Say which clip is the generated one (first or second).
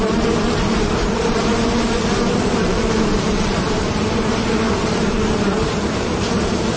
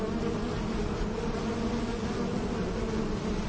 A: first